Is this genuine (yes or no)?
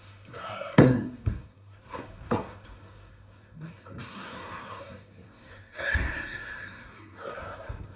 no